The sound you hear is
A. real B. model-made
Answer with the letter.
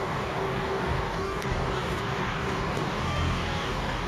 B